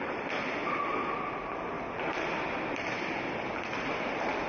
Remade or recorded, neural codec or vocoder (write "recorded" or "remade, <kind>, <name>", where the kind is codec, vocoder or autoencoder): recorded